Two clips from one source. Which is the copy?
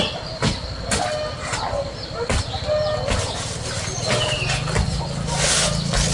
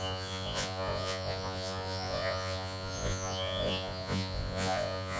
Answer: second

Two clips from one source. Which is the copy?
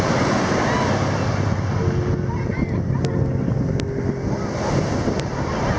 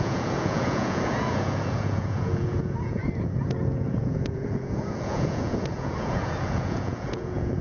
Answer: second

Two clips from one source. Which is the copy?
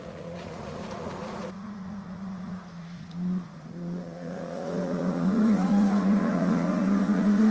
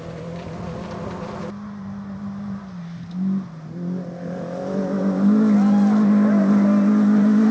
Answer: first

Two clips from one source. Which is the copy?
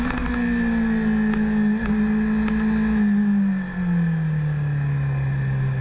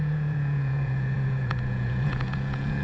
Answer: second